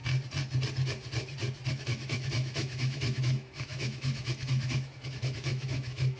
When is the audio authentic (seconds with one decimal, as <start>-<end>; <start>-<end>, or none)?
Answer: 0.0-1.7